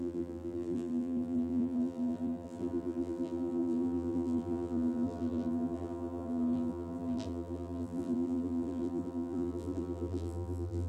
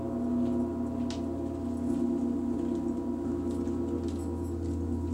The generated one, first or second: first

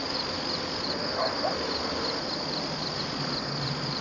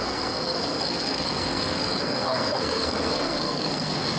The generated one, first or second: second